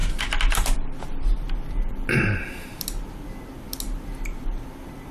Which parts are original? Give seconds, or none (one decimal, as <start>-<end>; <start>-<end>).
0.0-1.7; 2.7-5.1